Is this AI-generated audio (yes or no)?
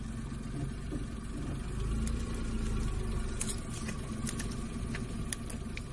no